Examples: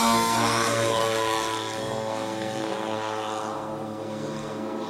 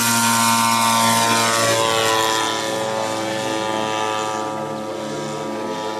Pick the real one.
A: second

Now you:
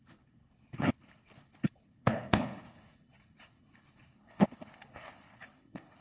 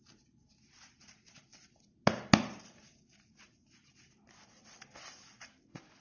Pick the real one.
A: second